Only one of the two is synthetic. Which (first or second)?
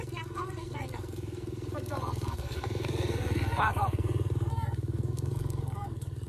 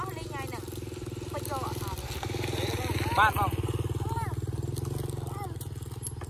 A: first